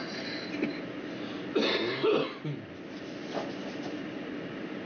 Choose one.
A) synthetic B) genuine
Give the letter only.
B